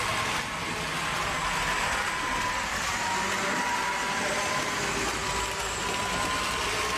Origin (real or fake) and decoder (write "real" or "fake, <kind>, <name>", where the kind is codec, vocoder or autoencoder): real